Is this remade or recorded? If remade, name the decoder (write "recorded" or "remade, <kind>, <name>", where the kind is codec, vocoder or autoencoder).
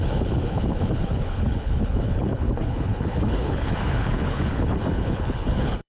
remade, codec, HILCodec